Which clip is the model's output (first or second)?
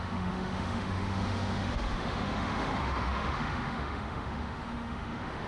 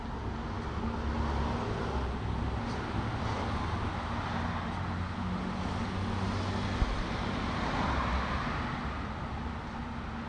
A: first